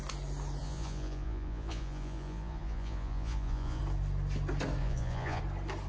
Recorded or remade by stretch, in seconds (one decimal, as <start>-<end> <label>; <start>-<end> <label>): 0.0-0.6 recorded; 0.6-3.8 remade; 3.8-4.8 recorded; 4.8-5.4 remade; 5.4-5.9 recorded